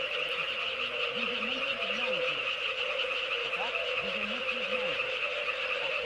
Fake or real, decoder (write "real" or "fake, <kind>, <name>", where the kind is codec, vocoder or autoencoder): fake, vocoder, BigVGAN v2